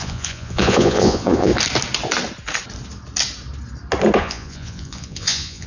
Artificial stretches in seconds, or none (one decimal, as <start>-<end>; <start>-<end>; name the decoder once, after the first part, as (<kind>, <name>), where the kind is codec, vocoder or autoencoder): 0.0-1.5 (vocoder, Vocos); 4.2-5.7